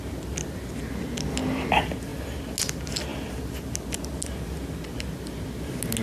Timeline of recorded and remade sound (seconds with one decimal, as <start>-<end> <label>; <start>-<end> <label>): 0.0-6.0 recorded